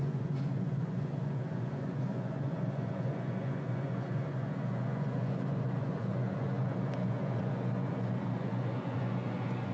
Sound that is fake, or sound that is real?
fake